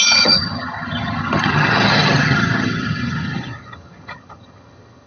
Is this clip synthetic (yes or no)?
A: yes